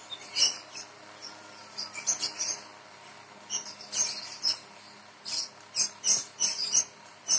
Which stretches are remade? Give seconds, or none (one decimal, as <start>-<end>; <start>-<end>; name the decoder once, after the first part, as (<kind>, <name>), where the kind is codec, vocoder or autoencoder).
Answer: 0.0-0.5 (vocoder, BigVGAN v2)